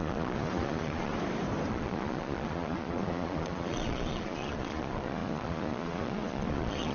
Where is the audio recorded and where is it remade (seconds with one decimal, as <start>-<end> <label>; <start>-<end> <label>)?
0.0-1.1 remade; 1.1-1.7 recorded; 1.7-6.9 remade